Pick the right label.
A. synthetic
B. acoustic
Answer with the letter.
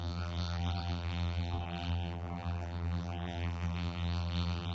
A